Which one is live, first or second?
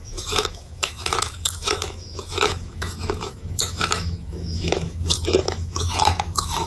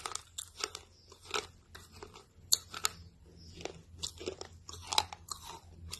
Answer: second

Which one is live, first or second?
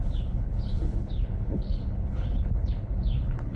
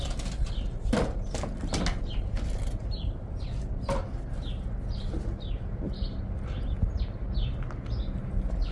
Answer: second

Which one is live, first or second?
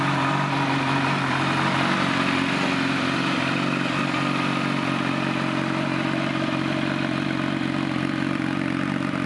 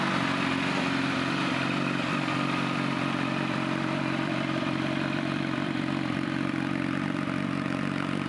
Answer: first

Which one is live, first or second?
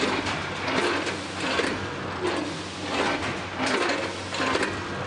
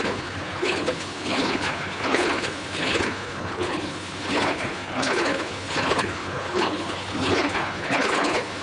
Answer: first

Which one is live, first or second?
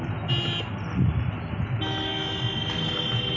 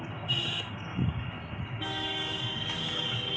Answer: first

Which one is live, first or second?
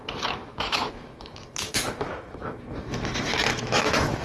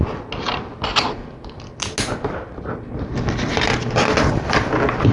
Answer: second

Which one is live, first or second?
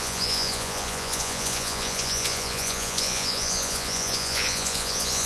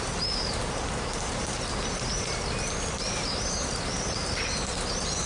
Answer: second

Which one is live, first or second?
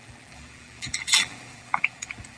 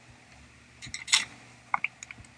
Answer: second